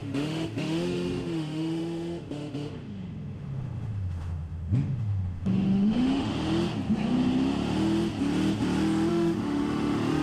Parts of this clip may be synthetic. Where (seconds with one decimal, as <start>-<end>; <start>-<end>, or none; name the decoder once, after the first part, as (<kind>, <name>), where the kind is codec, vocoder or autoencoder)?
0.0-6.3 (autoencoder, DAC-VAE); 9.1-10.2